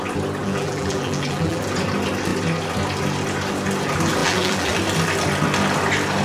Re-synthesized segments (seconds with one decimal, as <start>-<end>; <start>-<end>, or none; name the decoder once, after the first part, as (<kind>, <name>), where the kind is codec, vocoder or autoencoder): 0.4-1.6 (vocoder, BigVGAN v2); 4.2-4.7